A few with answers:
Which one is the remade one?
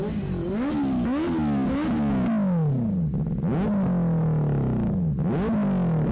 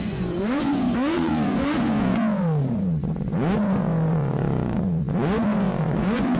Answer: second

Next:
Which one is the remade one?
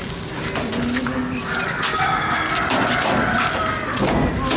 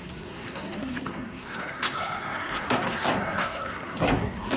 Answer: second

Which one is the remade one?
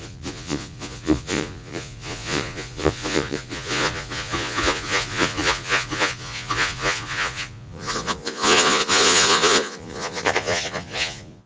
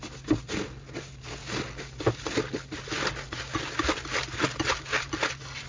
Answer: first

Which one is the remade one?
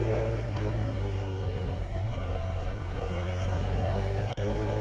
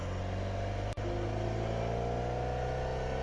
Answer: first